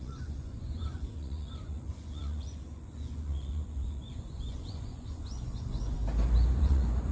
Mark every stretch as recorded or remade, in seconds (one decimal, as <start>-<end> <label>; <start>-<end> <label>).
0.0-6.0 remade; 6.0-6.6 recorded; 6.6-7.1 remade